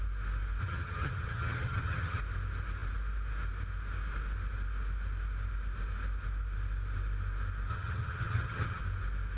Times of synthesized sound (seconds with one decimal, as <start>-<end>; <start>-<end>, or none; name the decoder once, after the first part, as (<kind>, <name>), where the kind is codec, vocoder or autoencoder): 0.6-2.2 (vocoder, HiFi-GAN); 7.7-8.8